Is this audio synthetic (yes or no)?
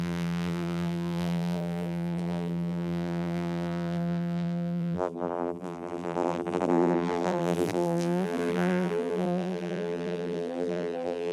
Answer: yes